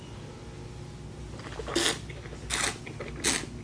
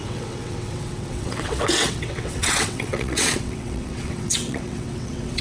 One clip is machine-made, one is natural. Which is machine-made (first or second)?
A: second